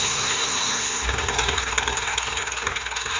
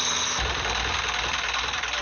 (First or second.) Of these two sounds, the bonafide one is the second